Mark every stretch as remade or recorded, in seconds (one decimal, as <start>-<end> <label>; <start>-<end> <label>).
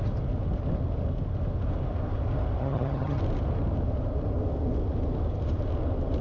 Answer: 0.0-2.6 recorded; 2.6-3.2 remade; 3.2-6.2 recorded